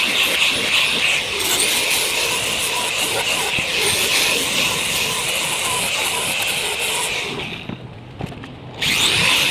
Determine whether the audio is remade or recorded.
recorded